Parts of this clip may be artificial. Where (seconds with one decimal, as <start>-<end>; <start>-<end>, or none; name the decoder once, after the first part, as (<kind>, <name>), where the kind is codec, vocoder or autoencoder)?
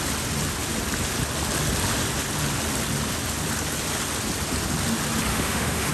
5.3-5.9 (autoencoder, DAC-VAE)